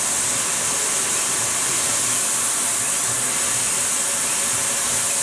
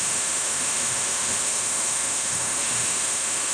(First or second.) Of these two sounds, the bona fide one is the first